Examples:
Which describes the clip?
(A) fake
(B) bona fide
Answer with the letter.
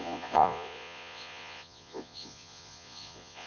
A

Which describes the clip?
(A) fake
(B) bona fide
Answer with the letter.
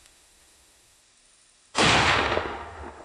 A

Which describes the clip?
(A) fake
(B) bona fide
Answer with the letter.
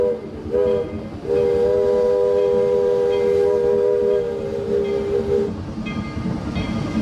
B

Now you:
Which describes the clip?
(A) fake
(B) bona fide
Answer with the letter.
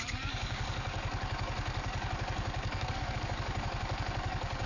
A